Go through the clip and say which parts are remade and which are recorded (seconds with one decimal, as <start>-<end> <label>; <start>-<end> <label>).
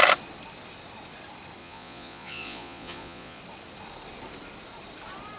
0.0-1.6 recorded; 1.6-3.4 remade; 3.4-5.4 recorded